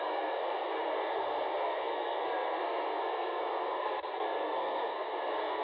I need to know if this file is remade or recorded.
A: remade